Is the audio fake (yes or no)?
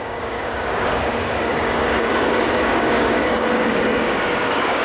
yes